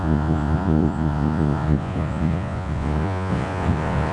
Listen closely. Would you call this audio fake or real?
fake